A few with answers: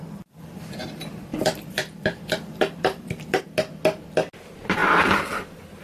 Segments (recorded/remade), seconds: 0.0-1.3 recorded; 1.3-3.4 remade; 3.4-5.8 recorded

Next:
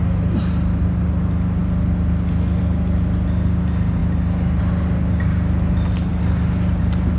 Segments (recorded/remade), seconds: 0.0-7.2 recorded

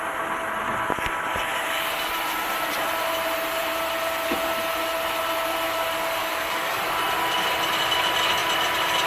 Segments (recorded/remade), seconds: 0.0-6.2 recorded; 6.2-6.8 remade; 6.8-9.1 recorded

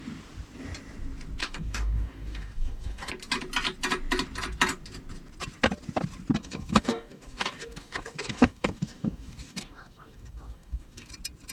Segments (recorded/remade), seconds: 0.0-1.4 recorded; 1.4-3.1 remade; 3.1-6.4 recorded; 6.4-11.1 remade; 11.1-11.5 recorded

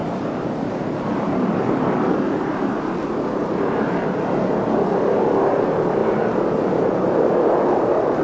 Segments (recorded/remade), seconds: 0.0-2.8 remade; 2.8-6.0 recorded; 6.0-7.3 remade; 7.3-8.2 recorded

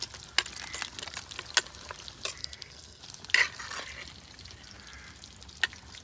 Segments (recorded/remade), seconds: 0.0-2.4 recorded; 2.4-3.0 remade; 3.0-6.0 recorded

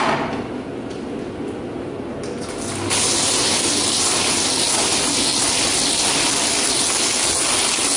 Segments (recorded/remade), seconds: 0.0-8.0 recorded